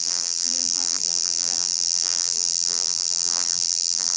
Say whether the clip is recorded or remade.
remade